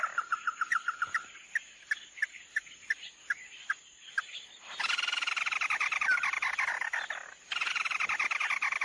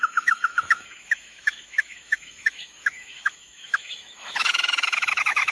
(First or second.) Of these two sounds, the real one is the first